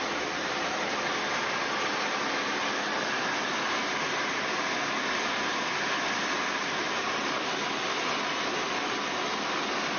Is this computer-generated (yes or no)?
no